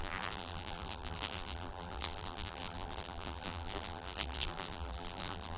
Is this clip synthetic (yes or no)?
yes